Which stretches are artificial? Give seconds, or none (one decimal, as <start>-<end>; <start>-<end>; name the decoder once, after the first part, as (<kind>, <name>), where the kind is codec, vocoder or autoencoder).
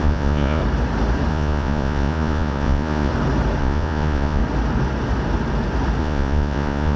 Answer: 0.0-0.6 (vocoder, Vocos); 1.3-3.1; 3.6-4.4; 6.0-7.0